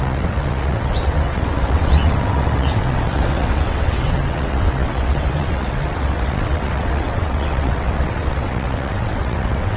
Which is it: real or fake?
fake